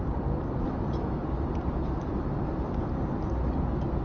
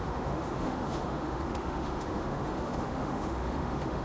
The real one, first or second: first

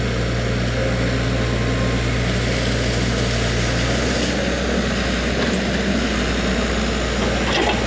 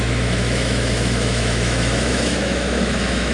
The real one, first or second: first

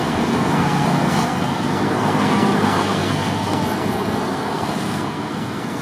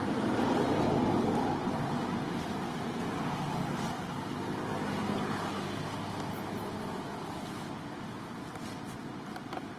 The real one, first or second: second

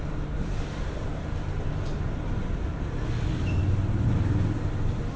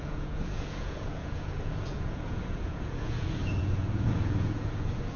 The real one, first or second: first